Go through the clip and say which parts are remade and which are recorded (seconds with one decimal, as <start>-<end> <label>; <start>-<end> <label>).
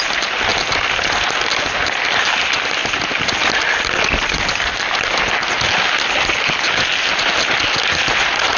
0.0-8.6 recorded